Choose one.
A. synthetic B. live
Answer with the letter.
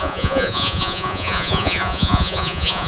A